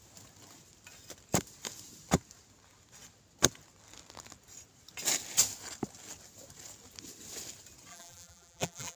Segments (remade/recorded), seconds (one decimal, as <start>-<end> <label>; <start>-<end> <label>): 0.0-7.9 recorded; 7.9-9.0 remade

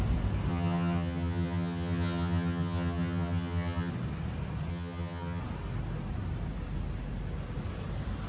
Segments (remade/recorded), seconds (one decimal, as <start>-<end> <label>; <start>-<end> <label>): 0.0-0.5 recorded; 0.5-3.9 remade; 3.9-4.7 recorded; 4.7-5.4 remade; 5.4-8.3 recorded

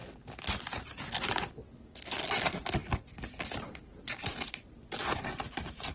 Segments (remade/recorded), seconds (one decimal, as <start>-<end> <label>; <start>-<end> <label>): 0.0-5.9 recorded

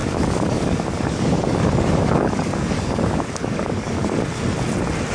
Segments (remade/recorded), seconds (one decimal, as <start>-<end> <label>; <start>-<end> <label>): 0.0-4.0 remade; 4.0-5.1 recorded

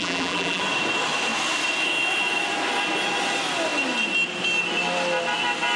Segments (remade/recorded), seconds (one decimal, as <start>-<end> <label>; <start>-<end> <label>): 0.0-0.6 remade; 0.6-5.8 recorded

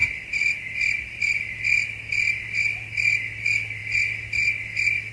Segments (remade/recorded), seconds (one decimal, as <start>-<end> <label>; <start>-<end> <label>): 0.0-5.1 recorded

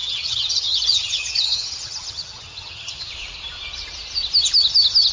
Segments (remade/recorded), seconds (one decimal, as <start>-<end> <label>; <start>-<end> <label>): 0.0-3.1 remade; 3.1-5.1 recorded

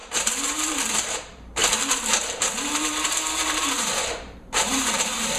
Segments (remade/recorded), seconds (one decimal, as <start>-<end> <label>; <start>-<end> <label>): 0.0-5.4 remade